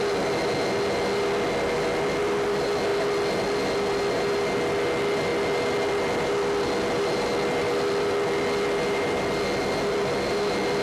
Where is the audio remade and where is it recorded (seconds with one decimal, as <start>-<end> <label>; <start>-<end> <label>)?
0.0-10.8 recorded